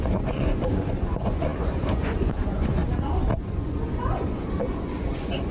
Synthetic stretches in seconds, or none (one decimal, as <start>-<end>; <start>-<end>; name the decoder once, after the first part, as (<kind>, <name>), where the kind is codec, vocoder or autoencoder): 0.0-2.8 (vocoder, Vocos); 3.4-5.5